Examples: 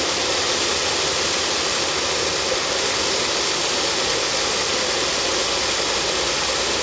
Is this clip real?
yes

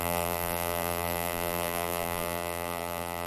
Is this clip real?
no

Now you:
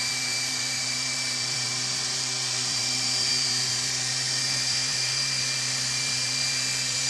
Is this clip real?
no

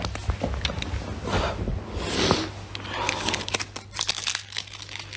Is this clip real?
yes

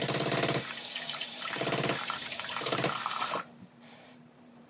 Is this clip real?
no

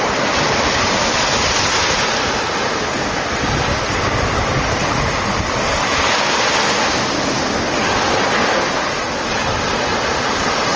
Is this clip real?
yes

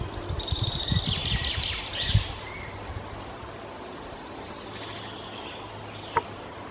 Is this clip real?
no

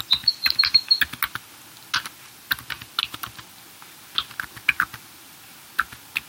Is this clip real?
yes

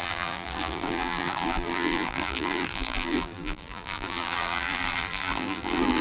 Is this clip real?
no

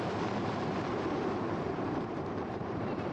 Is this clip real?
no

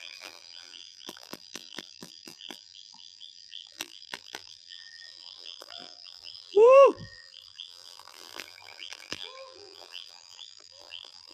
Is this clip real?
no